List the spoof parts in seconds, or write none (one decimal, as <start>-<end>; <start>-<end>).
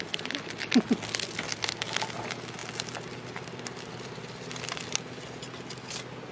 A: none